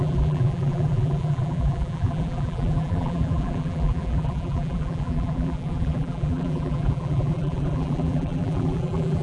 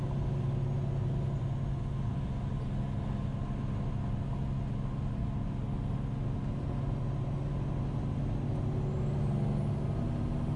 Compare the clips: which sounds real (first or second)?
second